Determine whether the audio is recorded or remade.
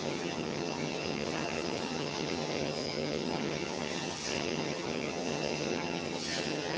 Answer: remade